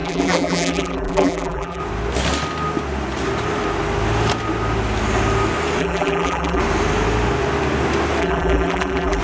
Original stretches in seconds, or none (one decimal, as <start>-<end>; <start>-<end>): 1.8-5.8; 6.6-8.2